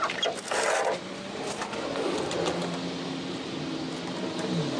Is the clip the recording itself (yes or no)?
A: yes